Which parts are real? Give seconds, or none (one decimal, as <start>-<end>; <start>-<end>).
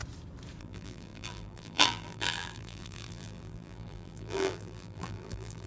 0.0-0.6